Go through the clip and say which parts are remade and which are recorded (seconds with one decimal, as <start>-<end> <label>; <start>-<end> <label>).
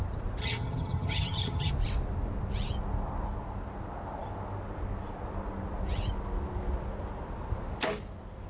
0.0-0.4 recorded; 0.4-1.7 remade; 1.7-8.5 recorded